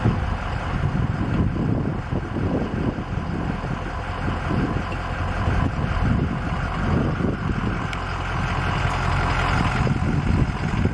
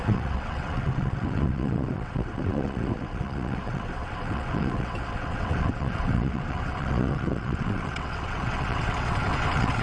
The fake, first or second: second